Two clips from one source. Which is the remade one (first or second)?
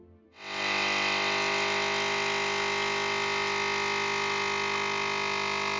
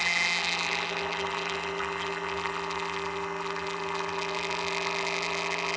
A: second